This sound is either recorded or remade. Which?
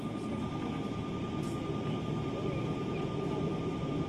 recorded